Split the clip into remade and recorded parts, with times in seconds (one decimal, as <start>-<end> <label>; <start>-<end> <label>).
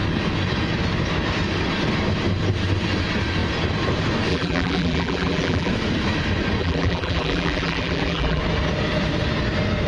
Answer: 0.0-4.3 recorded; 4.3-5.7 remade; 5.7-6.6 recorded; 6.6-8.4 remade; 8.4-9.9 recorded